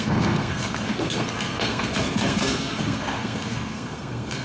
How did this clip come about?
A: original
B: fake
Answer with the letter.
B